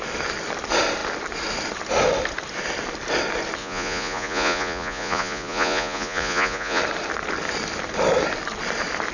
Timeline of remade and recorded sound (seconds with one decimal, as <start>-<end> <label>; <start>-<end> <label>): 0.0-3.6 recorded; 3.6-6.8 remade; 6.8-9.1 recorded